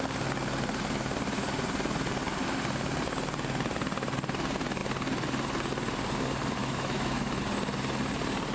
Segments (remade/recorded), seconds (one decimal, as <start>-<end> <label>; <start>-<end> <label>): 0.0-6.6 recorded; 6.6-7.4 remade; 7.4-8.5 recorded